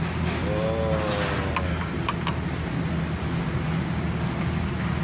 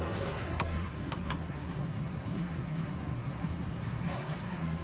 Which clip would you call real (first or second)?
first